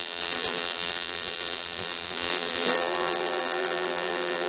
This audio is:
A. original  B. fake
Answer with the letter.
B